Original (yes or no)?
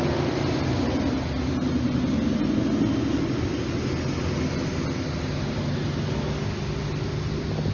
yes